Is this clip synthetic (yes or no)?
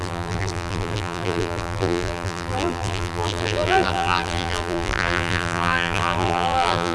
yes